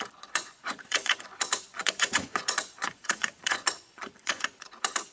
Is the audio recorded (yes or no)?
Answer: no